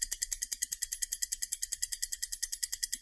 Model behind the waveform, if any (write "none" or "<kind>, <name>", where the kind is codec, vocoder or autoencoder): none